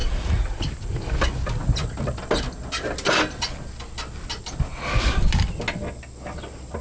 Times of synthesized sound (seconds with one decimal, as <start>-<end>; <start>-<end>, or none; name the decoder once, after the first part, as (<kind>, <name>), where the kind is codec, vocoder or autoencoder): 0.0-0.6 (vocoder, Vocos)

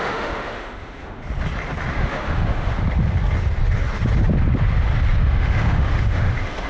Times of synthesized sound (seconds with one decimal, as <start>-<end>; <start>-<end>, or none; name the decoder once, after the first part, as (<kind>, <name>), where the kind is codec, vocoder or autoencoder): 0.0-1.2 (autoencoder, DAC-VAE); 1.9-2.7; 5.2-6.7

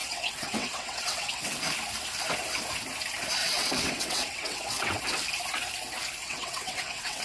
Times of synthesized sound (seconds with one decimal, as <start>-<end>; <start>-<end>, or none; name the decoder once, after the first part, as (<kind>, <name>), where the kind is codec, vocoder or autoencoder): 0.0-1.6 (vocoder, WaveNeXt); 3.4-5.0; 6.2-7.2

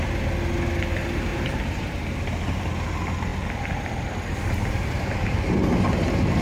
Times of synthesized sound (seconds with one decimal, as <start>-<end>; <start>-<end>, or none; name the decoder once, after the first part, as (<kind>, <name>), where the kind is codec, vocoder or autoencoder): 1.3-2.6 (vocoder, BigVGAN v2)

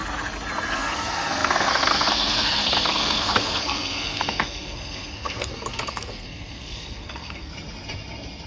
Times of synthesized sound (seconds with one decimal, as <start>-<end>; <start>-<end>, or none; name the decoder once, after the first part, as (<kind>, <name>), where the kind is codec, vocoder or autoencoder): 0.7-7.5 (codec, SNAC)